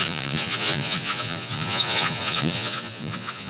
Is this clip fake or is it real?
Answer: fake